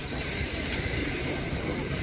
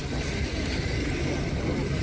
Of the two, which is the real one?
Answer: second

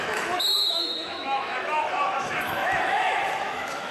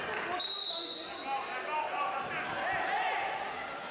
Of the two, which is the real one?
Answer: second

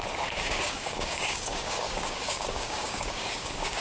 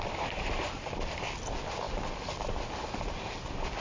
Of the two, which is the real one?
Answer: second